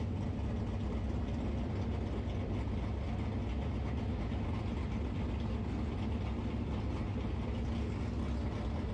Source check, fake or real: real